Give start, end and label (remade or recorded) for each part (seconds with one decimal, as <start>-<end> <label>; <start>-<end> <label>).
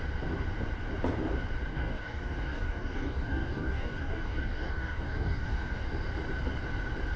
0.0-1.7 recorded; 1.7-5.8 remade; 5.8-7.2 recorded